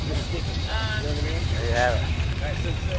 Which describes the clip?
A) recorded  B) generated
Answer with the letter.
A